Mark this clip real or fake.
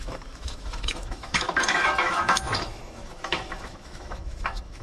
fake